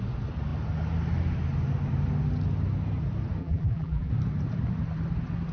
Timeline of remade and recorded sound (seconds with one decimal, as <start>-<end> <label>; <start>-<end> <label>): 0.0-3.4 recorded; 3.4-4.1 remade; 4.1-5.5 recorded